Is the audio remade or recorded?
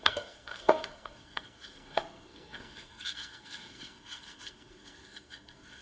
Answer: remade